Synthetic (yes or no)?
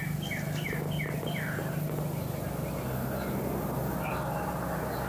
no